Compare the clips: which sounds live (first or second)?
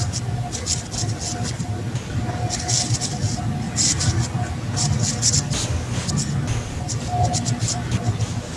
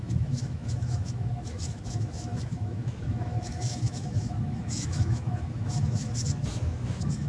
first